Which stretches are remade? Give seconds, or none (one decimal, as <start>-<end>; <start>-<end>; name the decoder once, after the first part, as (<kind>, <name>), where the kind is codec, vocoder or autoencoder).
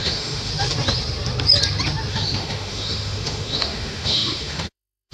0.0-0.5 (autoencoder, DAC-VAE); 2.1-5.1